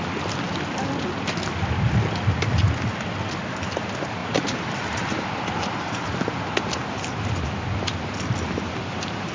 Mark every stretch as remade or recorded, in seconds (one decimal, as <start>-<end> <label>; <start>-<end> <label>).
0.0-4.2 recorded; 4.2-6.2 remade; 6.2-9.3 recorded